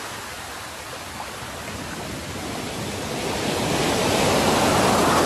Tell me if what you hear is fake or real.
real